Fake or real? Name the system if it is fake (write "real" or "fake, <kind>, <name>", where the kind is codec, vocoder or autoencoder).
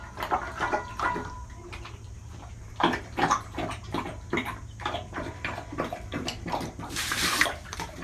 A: fake, vocoder, BigVGAN v2